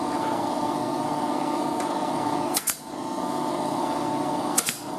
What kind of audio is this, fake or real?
fake